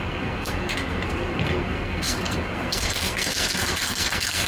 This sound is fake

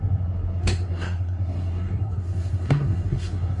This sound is fake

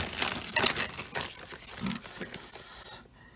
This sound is real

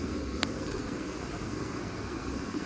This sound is fake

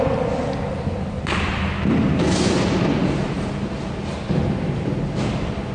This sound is real